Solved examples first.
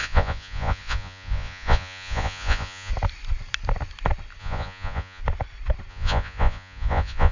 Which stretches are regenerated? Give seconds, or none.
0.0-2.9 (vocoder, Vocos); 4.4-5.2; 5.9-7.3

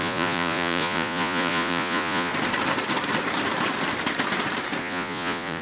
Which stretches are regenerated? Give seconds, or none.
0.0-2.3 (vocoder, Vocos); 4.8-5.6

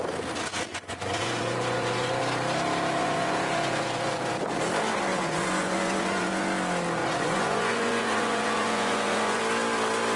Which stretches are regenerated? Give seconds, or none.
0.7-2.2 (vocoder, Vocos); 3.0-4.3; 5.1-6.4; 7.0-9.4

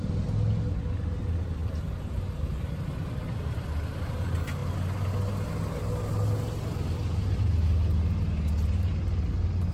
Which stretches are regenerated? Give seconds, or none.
none

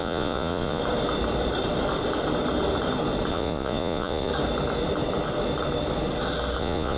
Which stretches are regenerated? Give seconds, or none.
0.0-0.8 (vocoder, Vocos); 3.3-4.3; 6.6-7.0

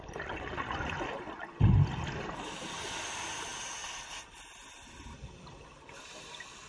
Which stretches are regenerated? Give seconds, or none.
none

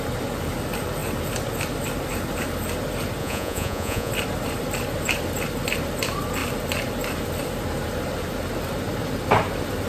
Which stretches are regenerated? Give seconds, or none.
3.2-4.1 (vocoder, Vocos)